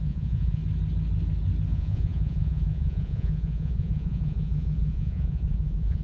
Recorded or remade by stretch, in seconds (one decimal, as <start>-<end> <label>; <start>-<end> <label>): 0.0-0.6 remade; 0.6-1.7 recorded; 1.7-6.0 remade